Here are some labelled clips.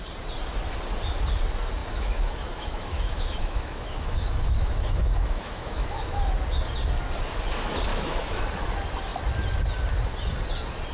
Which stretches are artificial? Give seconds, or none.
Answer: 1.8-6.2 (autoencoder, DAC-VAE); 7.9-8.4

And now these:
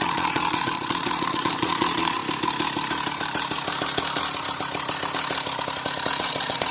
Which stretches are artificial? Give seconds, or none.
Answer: 0.0-2.2 (vocoder, Vocos); 6.2-6.7

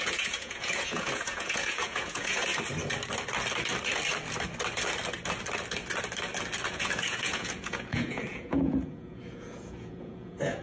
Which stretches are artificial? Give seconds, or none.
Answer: 0.0-2.5 (vocoder, Vocos); 6.7-10.6

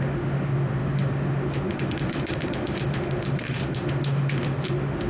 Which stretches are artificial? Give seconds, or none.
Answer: 0.0-5.1 (autoencoder, DAC-VAE)

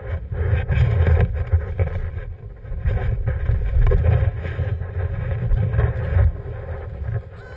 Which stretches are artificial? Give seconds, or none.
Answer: 1.8-2.4 (vocoder, Vocos)

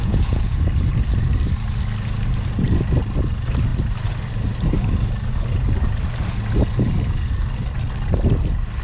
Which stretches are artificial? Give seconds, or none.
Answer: 0.0-0.6 (vocoder, Vocos)

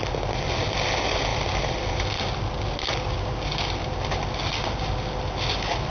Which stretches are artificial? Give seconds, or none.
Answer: 1.3-1.9 (vocoder, BigVGAN v2)

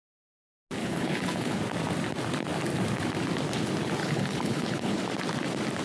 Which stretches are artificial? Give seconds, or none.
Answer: 0.8-1.6 (codec, HILCodec); 4.0-5.0